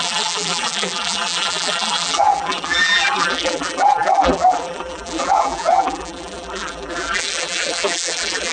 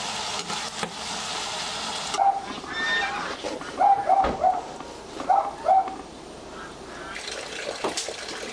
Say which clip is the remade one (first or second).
first